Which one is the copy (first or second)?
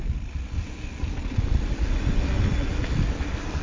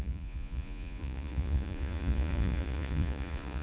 second